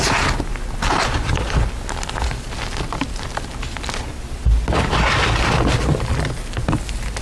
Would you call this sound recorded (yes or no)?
yes